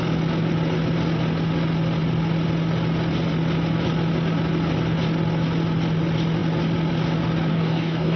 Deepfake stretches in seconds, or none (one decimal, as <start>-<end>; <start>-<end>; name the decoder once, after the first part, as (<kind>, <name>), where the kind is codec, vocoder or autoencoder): 7.5-8.2 (codec, DAC)